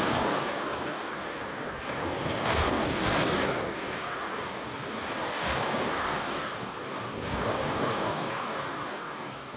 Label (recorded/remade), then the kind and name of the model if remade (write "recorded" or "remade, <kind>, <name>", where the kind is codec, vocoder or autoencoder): remade, codec, DAC